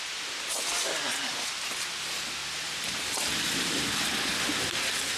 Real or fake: real